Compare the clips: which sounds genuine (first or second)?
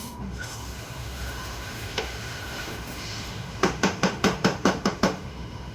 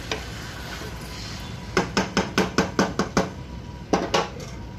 second